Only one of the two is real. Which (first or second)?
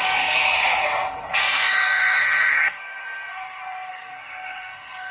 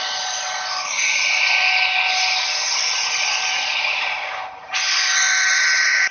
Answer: second